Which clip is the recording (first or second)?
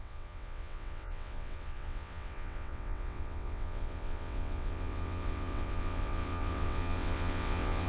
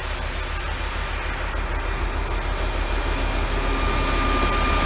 second